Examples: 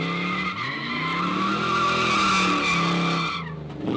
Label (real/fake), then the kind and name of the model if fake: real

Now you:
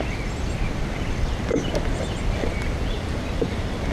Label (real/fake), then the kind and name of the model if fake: real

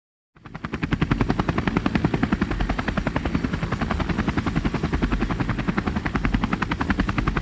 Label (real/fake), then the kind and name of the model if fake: real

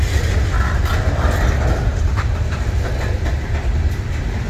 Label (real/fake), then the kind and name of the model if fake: real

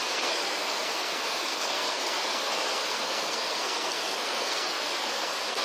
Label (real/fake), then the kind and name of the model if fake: fake, codec, SNAC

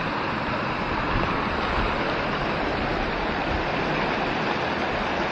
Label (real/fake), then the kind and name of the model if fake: real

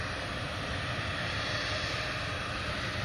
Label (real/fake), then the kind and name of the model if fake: real